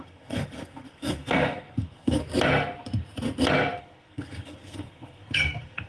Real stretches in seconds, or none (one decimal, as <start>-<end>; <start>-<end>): 2.2-3.8